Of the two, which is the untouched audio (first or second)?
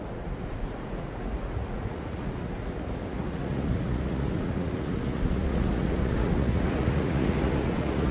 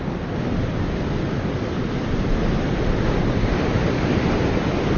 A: second